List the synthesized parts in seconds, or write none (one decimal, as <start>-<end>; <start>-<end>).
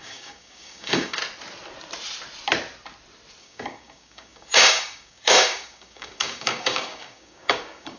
0.0-1.2; 3.4-8.0